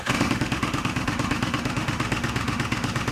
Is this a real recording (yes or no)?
no